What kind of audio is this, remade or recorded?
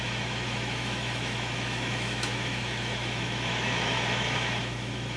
remade